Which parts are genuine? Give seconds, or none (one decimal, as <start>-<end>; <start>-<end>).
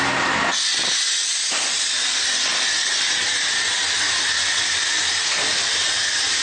0.0-6.4